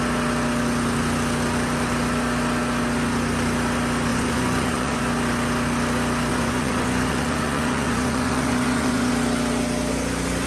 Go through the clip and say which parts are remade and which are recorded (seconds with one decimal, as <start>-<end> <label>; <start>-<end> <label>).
0.0-4.1 recorded; 4.1-5.0 remade; 5.0-6.3 recorded; 6.3-9.1 remade; 9.1-10.5 recorded